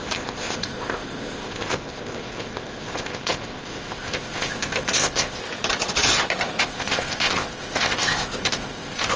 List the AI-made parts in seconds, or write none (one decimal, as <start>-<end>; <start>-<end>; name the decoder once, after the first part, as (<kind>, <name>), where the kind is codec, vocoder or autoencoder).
0.0-5.4 (codec, ZipCodec); 6.6-9.2